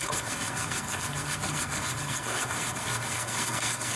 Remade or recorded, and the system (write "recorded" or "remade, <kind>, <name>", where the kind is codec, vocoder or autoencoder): remade, codec, SNAC